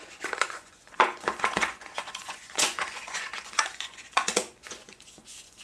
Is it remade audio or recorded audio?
remade